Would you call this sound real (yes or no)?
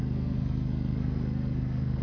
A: no